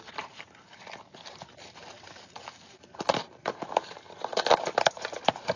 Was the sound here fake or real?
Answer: real